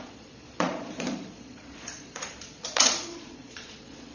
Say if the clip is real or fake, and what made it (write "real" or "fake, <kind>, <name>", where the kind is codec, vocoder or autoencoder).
fake, vocoder, Vocos